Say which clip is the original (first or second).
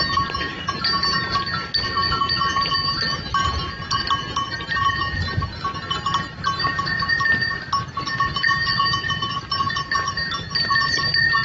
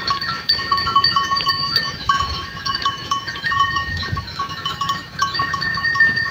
first